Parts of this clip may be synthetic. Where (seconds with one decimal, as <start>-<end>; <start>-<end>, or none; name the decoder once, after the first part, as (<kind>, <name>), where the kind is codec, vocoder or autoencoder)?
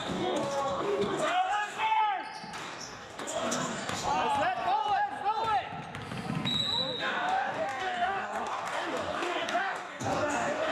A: 0.0-2.0 (codec, DAC); 2.6-4.1; 7.0-10.7